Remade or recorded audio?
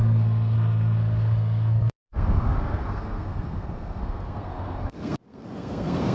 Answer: remade